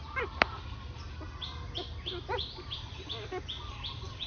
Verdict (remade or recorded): recorded